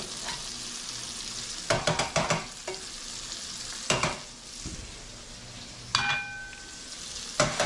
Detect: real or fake real